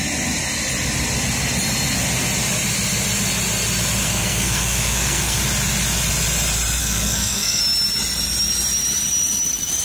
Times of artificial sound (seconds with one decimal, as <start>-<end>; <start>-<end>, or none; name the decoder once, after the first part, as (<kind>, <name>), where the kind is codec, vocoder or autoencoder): 4.0-5.4 (codec, SNAC); 6.8-7.6